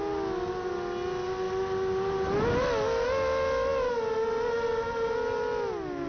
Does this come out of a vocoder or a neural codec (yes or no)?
no